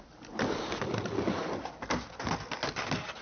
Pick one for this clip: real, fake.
real